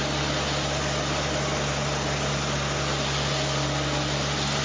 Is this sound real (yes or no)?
yes